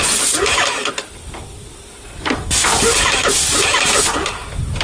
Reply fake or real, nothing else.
real